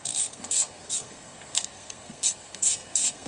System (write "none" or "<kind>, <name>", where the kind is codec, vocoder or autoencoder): codec, SNAC